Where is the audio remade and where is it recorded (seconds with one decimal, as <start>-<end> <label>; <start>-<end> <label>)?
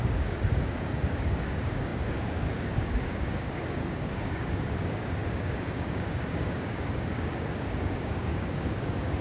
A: 0.0-9.2 remade